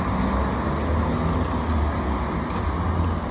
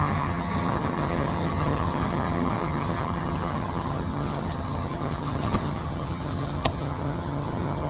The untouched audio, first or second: first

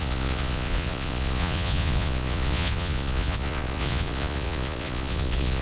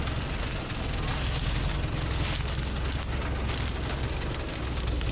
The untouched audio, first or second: second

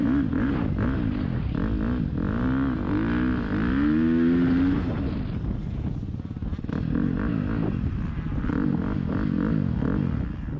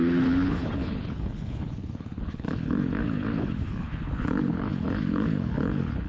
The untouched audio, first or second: first